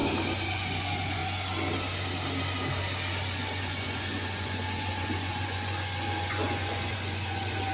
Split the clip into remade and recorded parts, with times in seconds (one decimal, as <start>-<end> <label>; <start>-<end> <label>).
0.0-0.5 recorded; 0.5-1.2 remade; 1.2-3.3 recorded; 3.3-7.7 remade